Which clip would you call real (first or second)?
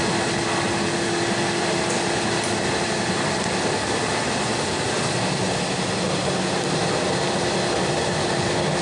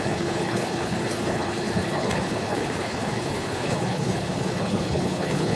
first